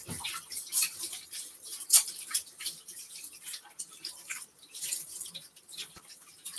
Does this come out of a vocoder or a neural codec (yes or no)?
yes